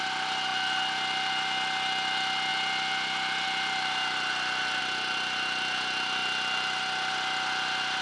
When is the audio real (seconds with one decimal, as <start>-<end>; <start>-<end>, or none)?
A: 0.0-8.0

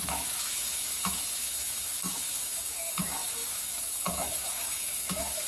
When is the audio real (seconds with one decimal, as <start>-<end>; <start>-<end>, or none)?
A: none

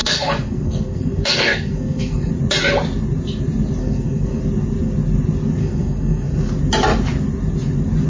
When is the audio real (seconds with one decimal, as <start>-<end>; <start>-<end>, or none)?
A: 2.3-3.8; 4.4-5.6; 6.5-8.1

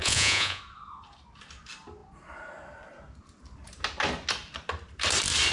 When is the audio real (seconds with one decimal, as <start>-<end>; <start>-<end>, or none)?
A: 0.6-5.5